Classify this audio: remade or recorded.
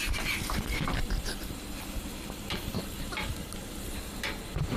remade